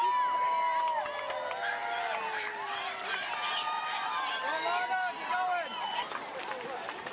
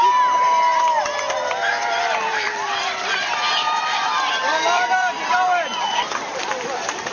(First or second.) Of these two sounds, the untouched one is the first